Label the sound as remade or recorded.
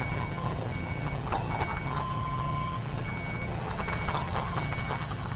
remade